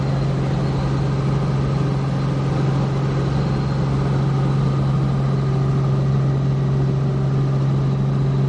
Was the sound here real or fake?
real